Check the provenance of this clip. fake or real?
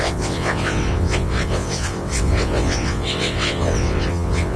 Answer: fake